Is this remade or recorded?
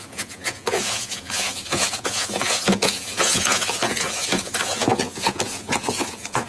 remade